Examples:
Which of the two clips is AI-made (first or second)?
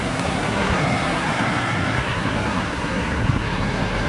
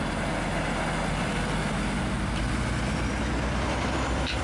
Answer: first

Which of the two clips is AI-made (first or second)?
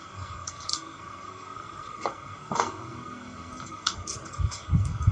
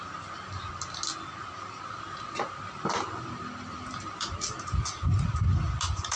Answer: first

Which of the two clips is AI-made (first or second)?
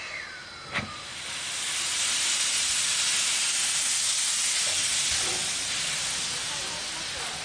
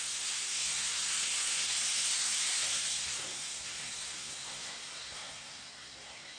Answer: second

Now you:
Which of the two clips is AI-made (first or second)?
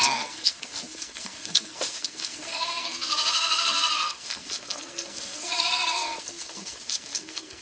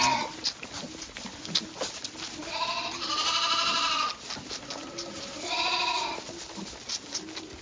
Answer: first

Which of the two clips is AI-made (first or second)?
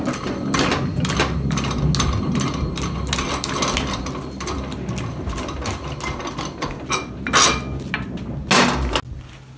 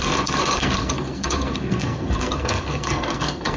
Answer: second